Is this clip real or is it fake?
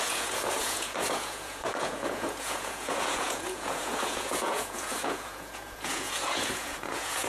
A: fake